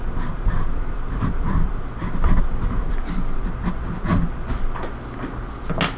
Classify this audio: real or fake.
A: real